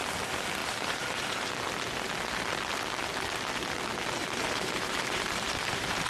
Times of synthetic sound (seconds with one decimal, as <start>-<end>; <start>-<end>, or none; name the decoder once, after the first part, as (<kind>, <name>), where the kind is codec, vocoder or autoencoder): 0.6-1.5 (vocoder, BigVGAN v2); 4.2-6.1